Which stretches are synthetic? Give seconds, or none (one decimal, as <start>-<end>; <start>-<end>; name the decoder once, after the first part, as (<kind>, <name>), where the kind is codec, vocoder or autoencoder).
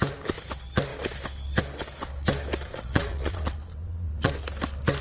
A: 2.7-4.3 (vocoder, Vocos)